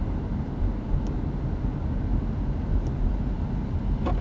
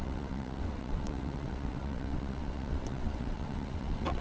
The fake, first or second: second